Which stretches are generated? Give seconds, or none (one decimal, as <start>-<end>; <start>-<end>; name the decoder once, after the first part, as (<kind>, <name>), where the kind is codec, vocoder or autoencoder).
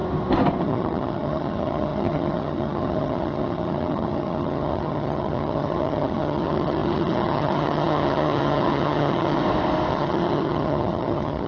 0.6-9.4 (vocoder, HiFi-GAN); 9.9-11.5